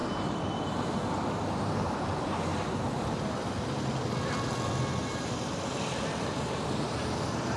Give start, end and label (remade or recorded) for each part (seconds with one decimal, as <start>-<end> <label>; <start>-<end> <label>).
0.0-0.5 recorded; 0.5-2.5 remade; 2.5-6.2 recorded; 6.2-7.6 remade